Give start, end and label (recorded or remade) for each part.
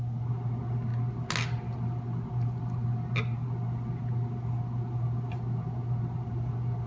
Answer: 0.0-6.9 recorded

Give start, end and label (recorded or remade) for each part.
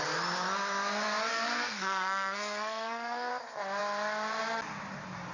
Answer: 0.0-1.3 recorded; 1.3-3.3 remade; 3.3-5.3 recorded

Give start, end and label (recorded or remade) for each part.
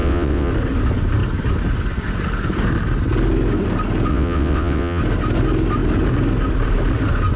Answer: 0.0-0.5 remade; 0.5-4.1 recorded; 4.1-5.0 remade; 5.0-7.4 recorded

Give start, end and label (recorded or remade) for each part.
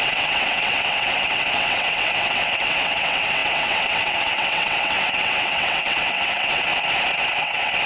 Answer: 0.0-6.7 remade; 6.7-7.4 recorded; 7.4-7.9 remade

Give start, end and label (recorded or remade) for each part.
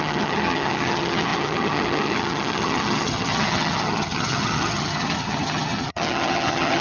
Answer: 0.0-6.8 remade